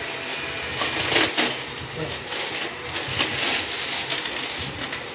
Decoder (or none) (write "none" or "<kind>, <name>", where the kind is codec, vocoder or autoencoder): none